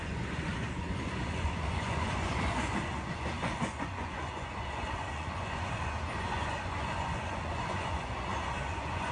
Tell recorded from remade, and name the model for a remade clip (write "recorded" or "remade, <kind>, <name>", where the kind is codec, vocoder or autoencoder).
remade, vocoder, Vocos